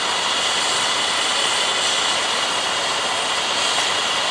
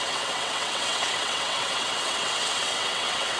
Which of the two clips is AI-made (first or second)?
second